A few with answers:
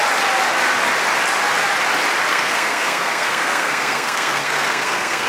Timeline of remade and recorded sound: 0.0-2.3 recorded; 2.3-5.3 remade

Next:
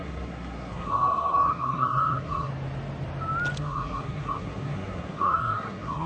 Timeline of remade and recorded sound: 0.0-2.5 remade; 2.5-3.6 recorded; 3.6-6.1 remade

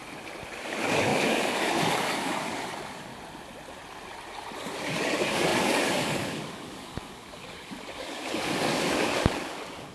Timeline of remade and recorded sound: 0.0-0.6 recorded; 0.6-3.1 remade; 3.1-4.6 recorded; 4.6-9.9 remade

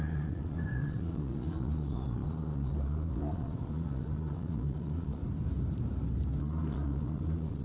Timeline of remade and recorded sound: 0.0-5.2 remade; 5.2-6.4 recorded; 6.4-7.6 remade